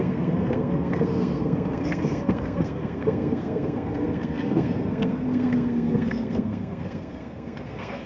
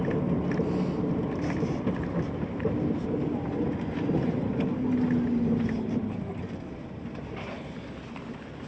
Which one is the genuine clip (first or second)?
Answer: second